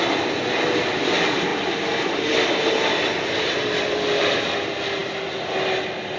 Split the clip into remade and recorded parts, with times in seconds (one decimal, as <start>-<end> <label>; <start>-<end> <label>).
0.0-6.2 recorded